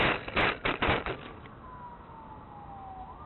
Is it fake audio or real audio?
real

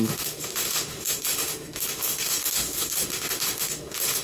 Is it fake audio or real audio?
fake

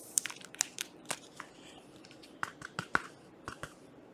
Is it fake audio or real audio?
fake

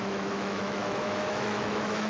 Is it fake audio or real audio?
fake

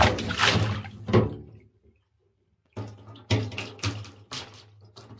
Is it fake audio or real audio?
real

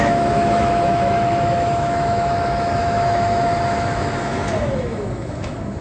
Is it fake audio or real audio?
fake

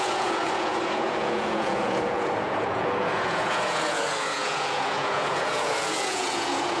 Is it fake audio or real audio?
fake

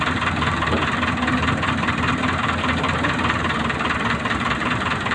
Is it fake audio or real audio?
fake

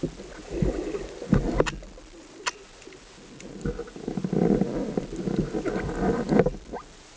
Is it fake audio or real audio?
real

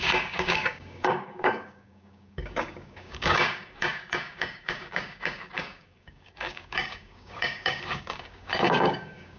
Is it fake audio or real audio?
fake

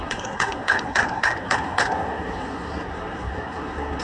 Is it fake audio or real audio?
fake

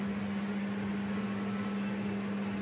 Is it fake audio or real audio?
real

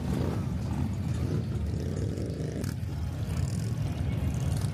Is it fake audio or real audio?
real